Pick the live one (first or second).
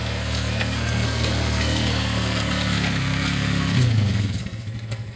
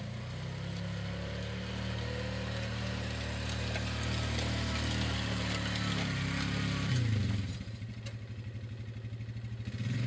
second